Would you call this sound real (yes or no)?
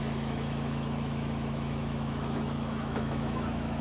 no